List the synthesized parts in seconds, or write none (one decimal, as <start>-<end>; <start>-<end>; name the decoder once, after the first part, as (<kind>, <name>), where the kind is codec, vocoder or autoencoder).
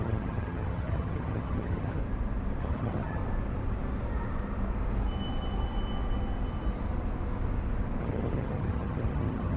0.0-2.0 (vocoder, HiFi-GAN); 2.6-3.2; 8.0-9.6